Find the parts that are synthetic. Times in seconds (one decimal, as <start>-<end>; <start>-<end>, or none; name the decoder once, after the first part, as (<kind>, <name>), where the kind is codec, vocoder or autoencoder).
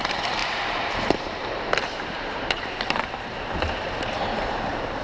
0.0-5.0 (vocoder, BigVGAN v2)